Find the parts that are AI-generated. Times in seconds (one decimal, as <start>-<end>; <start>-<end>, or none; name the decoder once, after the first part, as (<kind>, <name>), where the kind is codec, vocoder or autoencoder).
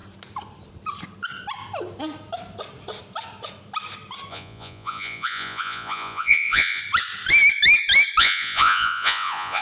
4.3-6.8 (vocoder, Vocos); 8.2-9.6